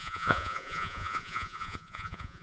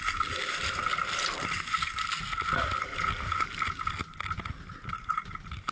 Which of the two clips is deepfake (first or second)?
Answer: first